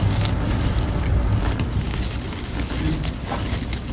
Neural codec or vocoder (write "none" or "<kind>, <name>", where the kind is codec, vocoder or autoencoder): none